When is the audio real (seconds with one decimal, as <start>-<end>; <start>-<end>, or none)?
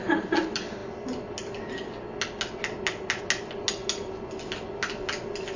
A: 0.0-5.6